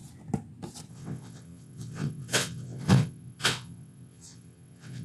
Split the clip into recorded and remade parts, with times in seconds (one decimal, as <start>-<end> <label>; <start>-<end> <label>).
0.0-0.9 recorded; 0.9-5.0 remade